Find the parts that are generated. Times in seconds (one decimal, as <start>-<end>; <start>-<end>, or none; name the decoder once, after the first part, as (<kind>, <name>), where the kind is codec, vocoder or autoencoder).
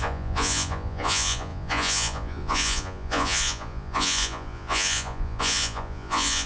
0.0-6.5 (vocoder, Vocos)